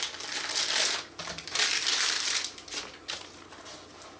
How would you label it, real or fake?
real